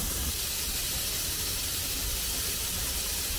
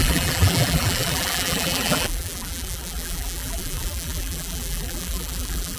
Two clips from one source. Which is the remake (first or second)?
second